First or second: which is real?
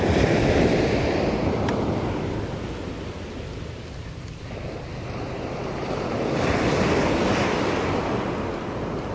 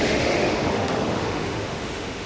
first